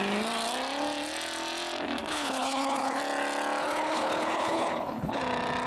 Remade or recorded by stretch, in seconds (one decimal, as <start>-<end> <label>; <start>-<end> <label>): 0.0-2.1 recorded; 2.1-3.0 remade; 3.0-3.6 recorded; 3.6-5.2 remade; 5.2-5.7 recorded